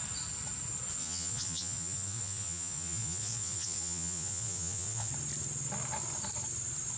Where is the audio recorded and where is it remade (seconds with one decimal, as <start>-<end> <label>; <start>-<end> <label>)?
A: 0.0-1.0 recorded; 1.0-5.1 remade; 5.1-7.0 recorded